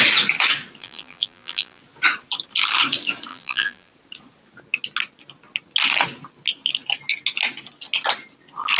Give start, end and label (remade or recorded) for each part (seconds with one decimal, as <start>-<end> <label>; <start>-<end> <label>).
0.0-0.8 recorded; 0.8-1.8 remade; 1.8-3.3 recorded; 3.3-3.9 remade; 3.9-8.8 recorded